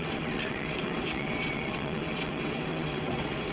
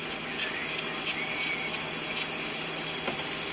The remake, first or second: first